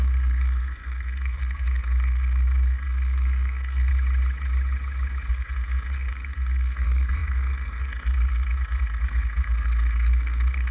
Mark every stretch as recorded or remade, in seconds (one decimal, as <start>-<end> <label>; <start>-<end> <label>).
0.0-3.9 remade; 3.9-5.3 recorded; 5.3-10.7 remade